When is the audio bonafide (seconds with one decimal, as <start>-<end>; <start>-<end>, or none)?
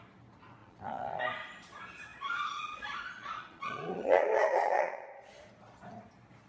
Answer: 0.0-0.6; 1.2-2.1; 5.3-6.5